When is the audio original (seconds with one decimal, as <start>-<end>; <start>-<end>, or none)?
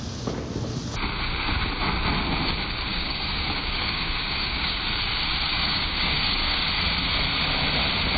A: 0.0-2.9; 4.8-5.5; 6.7-8.2